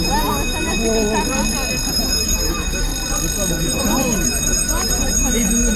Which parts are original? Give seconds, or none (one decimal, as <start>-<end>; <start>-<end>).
0.8-1.9; 2.9-3.5